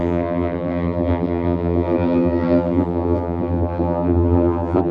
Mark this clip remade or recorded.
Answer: remade